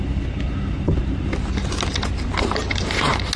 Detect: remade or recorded recorded